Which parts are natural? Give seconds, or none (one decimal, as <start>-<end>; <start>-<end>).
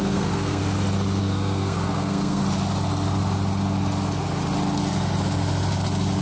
0.6-1.2; 2.4-6.2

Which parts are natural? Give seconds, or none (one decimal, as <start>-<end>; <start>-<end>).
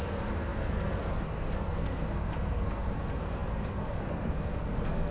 none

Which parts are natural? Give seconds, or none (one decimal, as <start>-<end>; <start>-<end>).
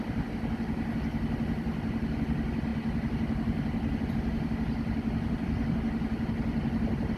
0.0-7.2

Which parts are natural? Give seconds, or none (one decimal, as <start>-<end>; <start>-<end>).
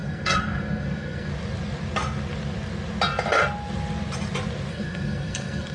1.3-4.7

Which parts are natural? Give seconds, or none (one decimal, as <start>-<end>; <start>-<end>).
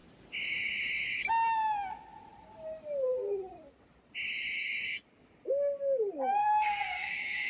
0.0-6.4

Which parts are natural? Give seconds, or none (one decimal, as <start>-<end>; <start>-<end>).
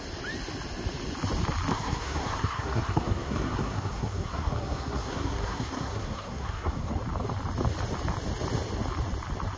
0.0-1.7; 6.9-9.6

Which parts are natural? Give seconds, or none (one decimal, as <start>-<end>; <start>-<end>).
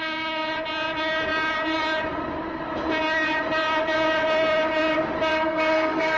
0.0-5.3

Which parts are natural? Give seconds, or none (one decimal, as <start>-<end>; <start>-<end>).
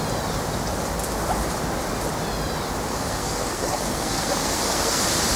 0.0-2.9; 5.0-5.4